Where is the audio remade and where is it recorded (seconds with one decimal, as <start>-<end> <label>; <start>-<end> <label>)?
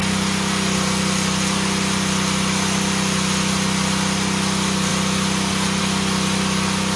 0.0-7.0 recorded